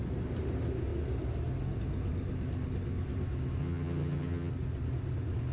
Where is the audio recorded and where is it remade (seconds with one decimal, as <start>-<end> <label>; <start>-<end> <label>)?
0.0-3.6 recorded; 3.6-4.5 remade; 4.5-5.5 recorded